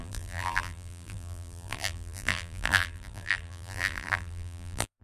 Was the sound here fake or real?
fake